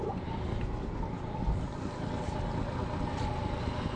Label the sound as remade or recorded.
recorded